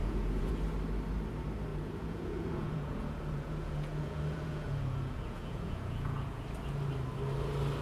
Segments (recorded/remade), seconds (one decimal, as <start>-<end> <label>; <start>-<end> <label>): 0.0-0.5 remade; 0.5-1.7 recorded; 1.7-6.4 remade; 6.4-7.8 recorded